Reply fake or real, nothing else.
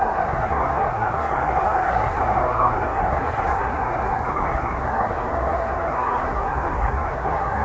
fake